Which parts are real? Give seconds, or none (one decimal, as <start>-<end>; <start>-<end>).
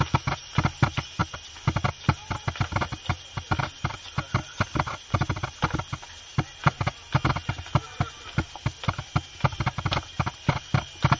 0.0-11.2